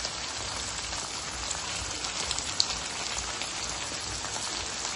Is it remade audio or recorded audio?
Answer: recorded